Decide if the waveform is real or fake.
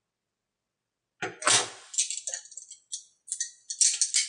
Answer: real